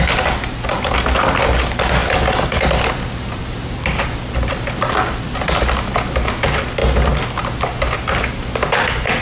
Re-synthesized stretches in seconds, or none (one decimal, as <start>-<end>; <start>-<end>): none